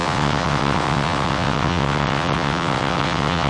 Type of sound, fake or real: fake